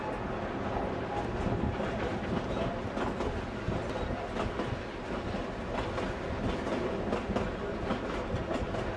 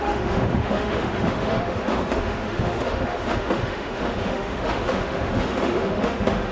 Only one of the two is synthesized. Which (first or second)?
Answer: second